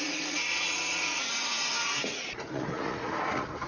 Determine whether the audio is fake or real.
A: fake